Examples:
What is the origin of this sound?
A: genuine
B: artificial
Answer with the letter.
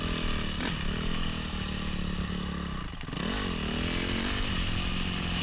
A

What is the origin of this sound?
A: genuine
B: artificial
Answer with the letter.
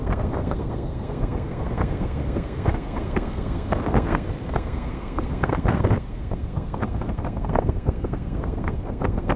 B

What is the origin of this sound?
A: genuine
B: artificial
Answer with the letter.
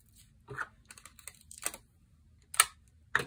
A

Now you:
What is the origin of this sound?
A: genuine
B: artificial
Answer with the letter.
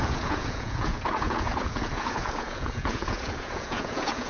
B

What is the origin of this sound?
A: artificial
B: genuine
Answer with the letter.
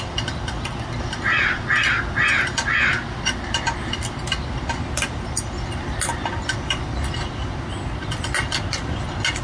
B